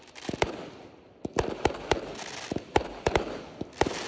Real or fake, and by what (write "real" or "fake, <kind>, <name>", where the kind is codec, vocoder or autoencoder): real